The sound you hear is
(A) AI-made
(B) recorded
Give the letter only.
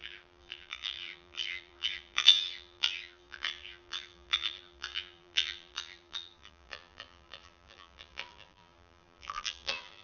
A